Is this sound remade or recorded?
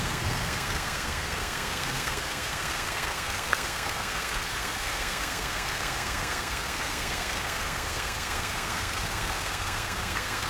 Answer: remade